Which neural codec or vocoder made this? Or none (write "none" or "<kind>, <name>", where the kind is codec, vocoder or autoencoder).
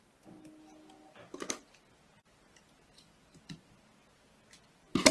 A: none